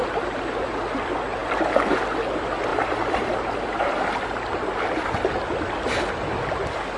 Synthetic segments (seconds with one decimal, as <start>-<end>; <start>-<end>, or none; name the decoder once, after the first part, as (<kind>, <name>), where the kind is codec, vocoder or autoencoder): 1.4-1.9 (vocoder, BigVGAN v2); 2.7-5.1